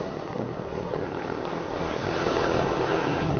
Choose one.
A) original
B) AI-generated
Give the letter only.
B